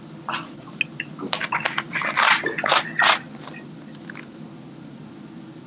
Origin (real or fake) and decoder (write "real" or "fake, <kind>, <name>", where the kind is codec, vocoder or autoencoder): real